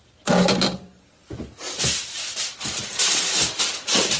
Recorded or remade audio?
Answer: recorded